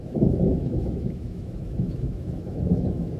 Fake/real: fake